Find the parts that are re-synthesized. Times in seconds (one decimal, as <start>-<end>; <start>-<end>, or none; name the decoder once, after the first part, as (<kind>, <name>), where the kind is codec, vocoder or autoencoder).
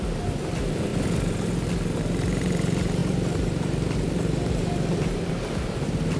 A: 0.0-0.9 (vocoder, BigVGAN v2); 2.0-6.2